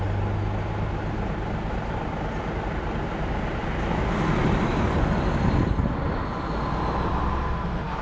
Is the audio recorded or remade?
recorded